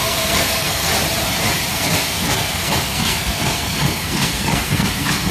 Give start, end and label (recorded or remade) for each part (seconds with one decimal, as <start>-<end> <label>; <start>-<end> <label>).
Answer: 0.0-0.9 remade; 0.9-1.7 recorded; 1.7-5.3 remade

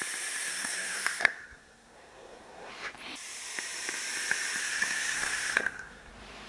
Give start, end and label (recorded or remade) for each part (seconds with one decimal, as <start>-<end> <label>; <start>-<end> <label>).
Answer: 0.0-0.5 recorded; 0.5-2.7 remade; 2.7-4.6 recorded; 4.6-6.1 remade; 6.1-6.5 recorded